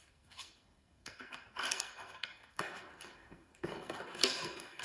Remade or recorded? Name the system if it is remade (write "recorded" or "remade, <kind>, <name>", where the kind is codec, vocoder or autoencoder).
remade, codec, SNAC